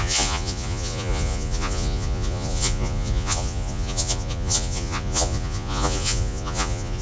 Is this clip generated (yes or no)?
yes